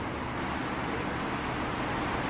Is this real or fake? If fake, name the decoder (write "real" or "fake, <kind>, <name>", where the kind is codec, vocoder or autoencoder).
real